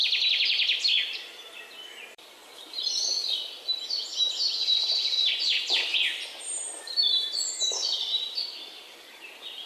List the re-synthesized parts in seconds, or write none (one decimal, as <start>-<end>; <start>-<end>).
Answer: 1.1-3.0; 4.6-9.7

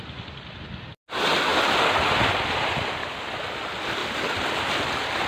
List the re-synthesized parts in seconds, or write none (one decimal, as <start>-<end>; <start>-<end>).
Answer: 4.0-5.3

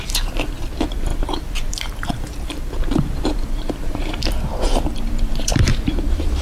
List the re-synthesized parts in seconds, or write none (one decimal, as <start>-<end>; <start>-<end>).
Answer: 0.0-6.4